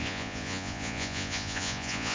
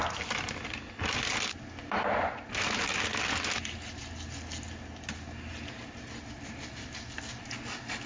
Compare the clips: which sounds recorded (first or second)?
second